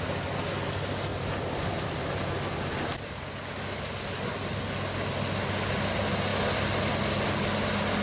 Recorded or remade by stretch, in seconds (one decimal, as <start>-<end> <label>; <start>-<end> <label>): 0.0-1.1 recorded; 1.1-2.1 remade; 2.1-2.9 recorded; 2.9-4.3 remade; 4.3-8.0 recorded

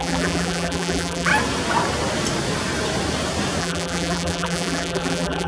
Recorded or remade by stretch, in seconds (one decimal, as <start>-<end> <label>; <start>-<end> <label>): 0.0-1.3 remade; 1.3-3.6 recorded; 3.6-5.5 remade